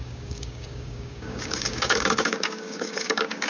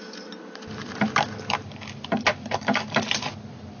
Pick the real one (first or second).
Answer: second